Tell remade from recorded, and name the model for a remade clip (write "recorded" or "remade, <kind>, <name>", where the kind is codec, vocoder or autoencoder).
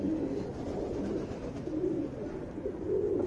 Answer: recorded